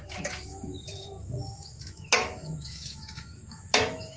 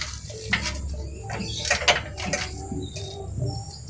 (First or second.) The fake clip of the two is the first